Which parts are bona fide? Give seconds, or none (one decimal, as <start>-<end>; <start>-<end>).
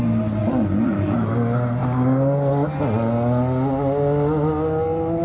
0.0-0.4; 1.3-5.2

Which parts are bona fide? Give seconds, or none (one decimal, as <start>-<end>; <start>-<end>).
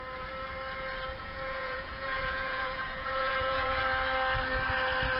0.0-1.2; 3.8-5.2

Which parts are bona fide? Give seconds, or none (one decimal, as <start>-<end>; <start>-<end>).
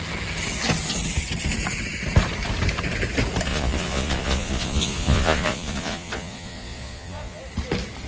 0.0-3.5; 7.4-8.1